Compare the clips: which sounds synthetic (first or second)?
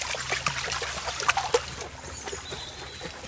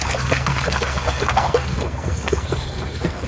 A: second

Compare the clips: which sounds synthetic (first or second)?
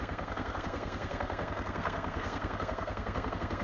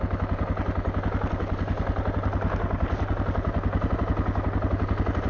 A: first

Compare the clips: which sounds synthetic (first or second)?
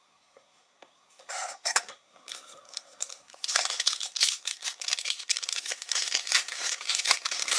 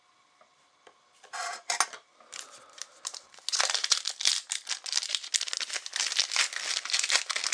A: first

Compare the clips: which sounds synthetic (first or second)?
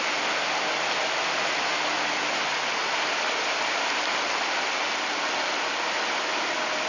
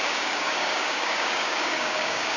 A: second